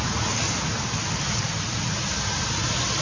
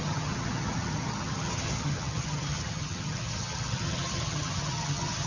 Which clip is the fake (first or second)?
second